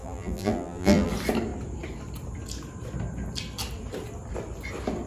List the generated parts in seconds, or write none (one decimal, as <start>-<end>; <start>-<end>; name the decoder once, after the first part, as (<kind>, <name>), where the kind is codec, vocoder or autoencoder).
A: 0.0-1.1 (vocoder, BigVGAN v2)

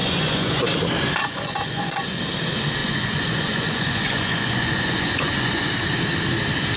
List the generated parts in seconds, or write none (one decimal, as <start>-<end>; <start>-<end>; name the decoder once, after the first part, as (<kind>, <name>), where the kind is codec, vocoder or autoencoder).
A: 0.0-0.6 (vocoder, Vocos); 1.2-2.2; 2.8-5.7

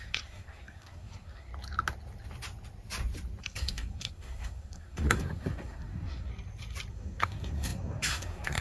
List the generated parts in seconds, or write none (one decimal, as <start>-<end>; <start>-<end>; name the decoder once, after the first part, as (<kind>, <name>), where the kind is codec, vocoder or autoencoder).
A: 0.0-1.5 (codec, SNAC); 3.4-6.3; 6.9-8.6

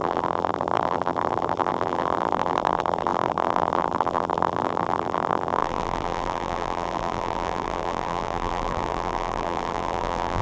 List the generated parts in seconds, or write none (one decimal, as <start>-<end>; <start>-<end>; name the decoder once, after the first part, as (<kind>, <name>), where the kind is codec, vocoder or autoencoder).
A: 0.0-10.4 (vocoder, BigVGAN v2)

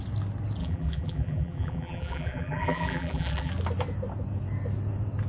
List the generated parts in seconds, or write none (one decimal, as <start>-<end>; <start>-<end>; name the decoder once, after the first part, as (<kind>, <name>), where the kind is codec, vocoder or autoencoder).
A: 0.6-3.5 (vocoder, BigVGAN v2)